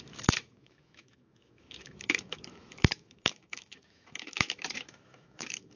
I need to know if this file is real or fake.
fake